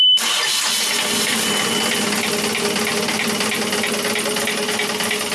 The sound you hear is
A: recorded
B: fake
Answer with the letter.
A